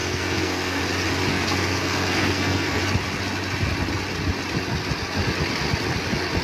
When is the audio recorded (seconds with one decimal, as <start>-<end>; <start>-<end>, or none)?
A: 0.8-1.3; 2.8-6.4